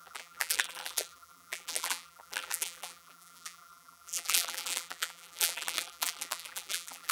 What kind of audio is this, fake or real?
fake